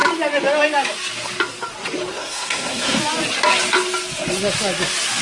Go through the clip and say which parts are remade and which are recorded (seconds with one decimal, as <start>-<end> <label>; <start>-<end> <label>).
0.0-2.1 recorded; 2.1-3.0 remade; 3.0-5.2 recorded